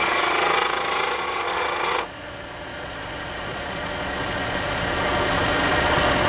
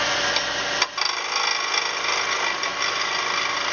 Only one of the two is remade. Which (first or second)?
first